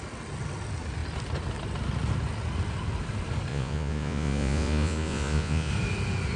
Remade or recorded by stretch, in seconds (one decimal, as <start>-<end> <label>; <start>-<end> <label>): 0.0-3.5 recorded; 3.5-5.7 remade; 5.7-6.4 recorded